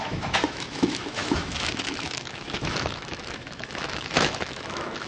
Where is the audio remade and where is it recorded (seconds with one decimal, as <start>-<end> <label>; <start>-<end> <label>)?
0.0-5.1 remade

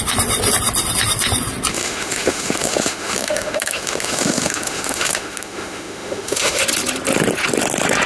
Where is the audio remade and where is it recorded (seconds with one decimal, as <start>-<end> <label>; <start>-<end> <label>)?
0.0-1.7 recorded; 1.7-6.6 remade; 6.6-8.1 recorded

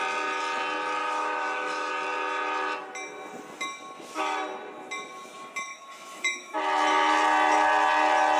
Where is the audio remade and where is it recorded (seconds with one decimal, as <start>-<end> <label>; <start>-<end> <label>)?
0.0-1.0 recorded; 1.0-1.9 remade; 1.9-5.7 recorded; 5.7-6.6 remade; 6.6-8.4 recorded

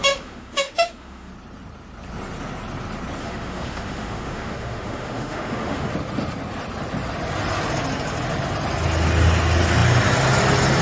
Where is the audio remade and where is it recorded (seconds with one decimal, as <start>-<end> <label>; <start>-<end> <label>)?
0.0-1.3 remade; 1.3-3.2 recorded; 3.2-5.9 remade; 5.9-10.8 recorded

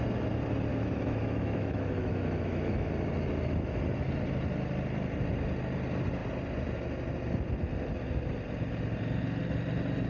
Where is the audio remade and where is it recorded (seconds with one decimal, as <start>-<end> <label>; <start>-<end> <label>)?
0.0-0.7 recorded; 0.7-2.9 remade; 2.9-10.1 recorded